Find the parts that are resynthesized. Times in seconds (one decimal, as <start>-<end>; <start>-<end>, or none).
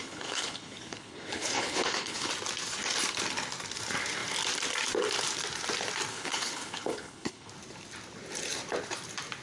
0.0-2.3; 6.1-7.5